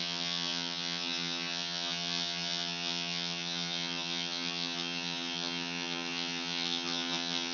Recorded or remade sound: remade